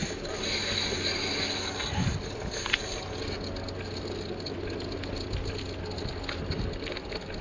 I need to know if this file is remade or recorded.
recorded